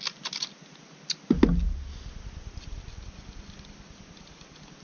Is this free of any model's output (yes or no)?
yes